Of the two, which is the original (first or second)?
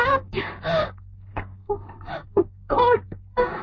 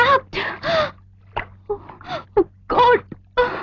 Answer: second